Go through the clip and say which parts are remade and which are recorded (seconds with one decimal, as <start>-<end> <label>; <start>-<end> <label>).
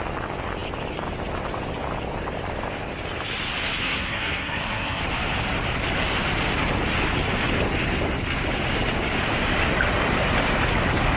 0.0-3.8 recorded; 3.8-5.0 remade; 5.0-11.2 recorded